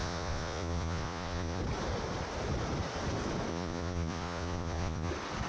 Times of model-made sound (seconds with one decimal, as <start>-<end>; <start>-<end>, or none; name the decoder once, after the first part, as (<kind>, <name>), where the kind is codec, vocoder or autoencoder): 0.0-1.6 (vocoder, Vocos); 3.5-5.1

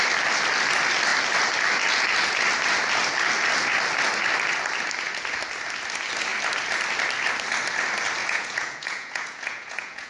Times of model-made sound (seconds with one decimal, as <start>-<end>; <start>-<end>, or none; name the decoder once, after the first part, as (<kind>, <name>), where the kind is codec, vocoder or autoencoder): 8.2-10.1 (vocoder, Vocos)

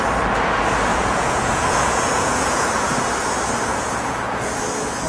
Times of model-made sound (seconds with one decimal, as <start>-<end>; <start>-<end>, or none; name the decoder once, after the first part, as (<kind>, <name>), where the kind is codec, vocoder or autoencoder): 0.9-3.0 (vocoder, Vocos); 3.7-4.6